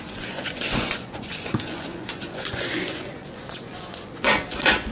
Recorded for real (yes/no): no